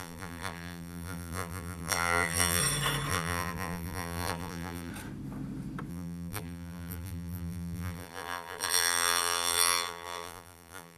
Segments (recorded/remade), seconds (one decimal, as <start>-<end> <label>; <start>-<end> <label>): 0.0-2.6 remade; 2.6-3.1 recorded; 3.1-4.9 remade; 4.9-5.9 recorded; 5.9-11.0 remade